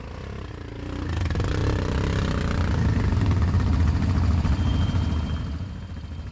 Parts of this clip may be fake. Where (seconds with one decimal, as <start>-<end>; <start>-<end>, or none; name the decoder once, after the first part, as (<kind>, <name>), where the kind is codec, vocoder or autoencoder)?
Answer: none